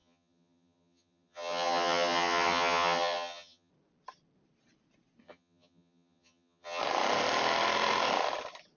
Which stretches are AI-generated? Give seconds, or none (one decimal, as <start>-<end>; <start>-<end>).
0.0-3.7; 5.2-6.8

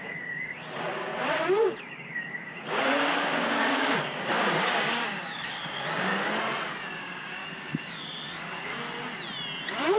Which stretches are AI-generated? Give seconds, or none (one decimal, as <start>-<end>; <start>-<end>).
0.0-1.1; 1.8-6.1; 7.0-8.7

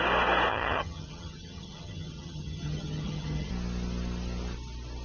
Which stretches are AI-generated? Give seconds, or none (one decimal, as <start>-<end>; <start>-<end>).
0.5-3.5

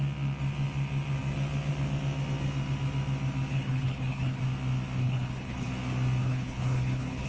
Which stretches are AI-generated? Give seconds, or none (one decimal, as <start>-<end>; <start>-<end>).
3.5-4.4; 5.0-5.7; 6.2-7.3

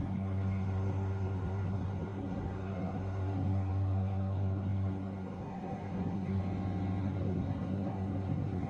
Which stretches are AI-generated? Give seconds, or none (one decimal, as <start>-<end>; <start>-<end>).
0.0-6.4; 7.0-8.7